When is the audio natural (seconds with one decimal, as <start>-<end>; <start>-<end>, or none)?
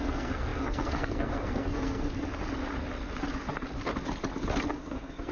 2.1-4.7